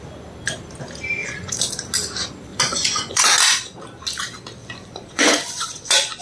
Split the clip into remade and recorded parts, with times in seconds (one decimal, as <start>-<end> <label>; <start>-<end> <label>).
0.0-1.2 recorded; 1.2-1.7 remade; 1.7-2.5 recorded; 2.5-3.3 remade; 3.3-4.6 recorded; 4.6-6.2 remade